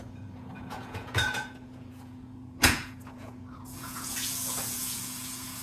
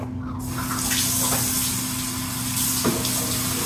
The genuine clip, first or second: second